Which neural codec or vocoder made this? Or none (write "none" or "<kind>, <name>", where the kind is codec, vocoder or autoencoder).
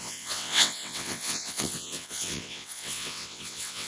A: vocoder, WaveNeXt